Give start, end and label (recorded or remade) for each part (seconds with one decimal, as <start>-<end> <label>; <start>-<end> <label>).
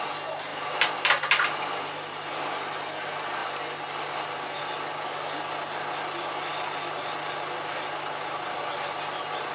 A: 0.0-9.5 recorded